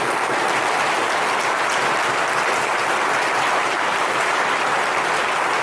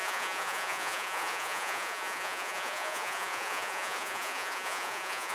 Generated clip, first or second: second